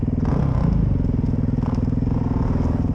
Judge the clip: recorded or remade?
recorded